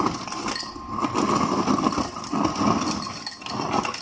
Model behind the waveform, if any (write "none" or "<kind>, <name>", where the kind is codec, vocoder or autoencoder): none